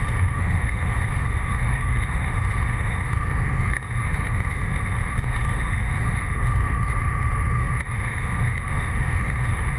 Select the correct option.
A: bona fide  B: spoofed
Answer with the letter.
B